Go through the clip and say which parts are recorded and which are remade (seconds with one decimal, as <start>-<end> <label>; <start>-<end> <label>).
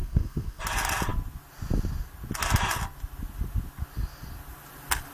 0.0-0.6 remade; 0.6-5.1 recorded